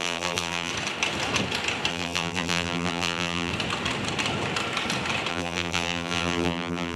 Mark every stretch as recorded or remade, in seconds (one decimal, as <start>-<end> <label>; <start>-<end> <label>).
0.0-0.7 remade; 0.7-1.9 recorded; 1.9-3.5 remade; 3.5-5.3 recorded; 5.3-7.0 remade